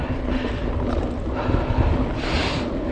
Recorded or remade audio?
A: recorded